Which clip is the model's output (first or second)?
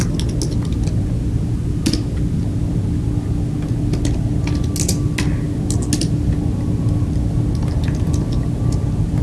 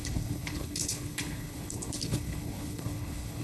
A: second